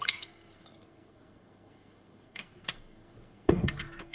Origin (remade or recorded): remade